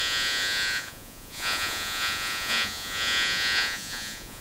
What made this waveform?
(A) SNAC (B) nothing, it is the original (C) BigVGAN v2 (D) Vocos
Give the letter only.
D